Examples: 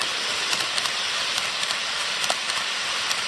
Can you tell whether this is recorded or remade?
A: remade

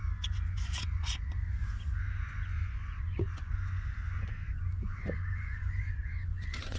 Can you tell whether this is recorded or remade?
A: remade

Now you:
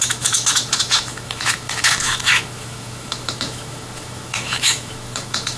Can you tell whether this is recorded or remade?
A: remade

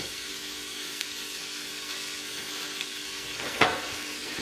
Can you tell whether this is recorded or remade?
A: remade